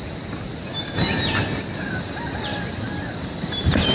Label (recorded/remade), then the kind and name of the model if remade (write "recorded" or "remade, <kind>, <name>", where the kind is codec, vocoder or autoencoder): recorded